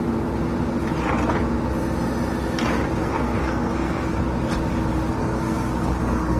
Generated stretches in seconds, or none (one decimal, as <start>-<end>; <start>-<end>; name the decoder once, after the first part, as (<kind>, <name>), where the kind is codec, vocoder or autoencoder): 3.0-4.2 (codec, SNAC); 5.2-6.4